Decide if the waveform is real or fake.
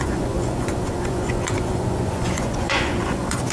fake